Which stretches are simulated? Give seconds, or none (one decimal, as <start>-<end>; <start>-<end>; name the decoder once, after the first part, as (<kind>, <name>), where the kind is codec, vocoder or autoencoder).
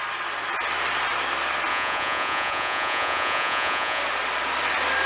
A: 1.7-4.0 (vocoder, Vocos)